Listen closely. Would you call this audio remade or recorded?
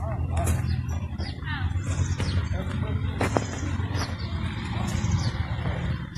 recorded